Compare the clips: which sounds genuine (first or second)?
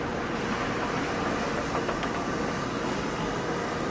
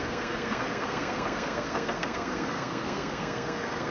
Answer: first